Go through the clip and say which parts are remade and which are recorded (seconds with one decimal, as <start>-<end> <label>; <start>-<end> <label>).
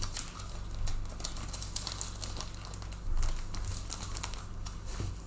0.0-5.3 recorded